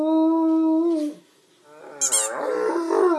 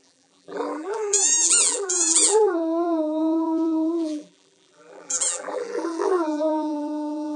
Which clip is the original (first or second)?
first